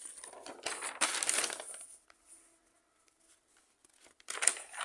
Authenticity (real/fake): real